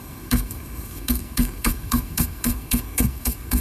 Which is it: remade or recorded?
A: remade